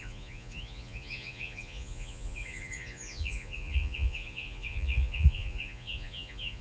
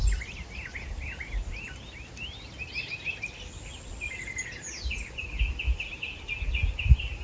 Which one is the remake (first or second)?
first